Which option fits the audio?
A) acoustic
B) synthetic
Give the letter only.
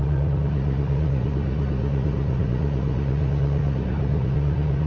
B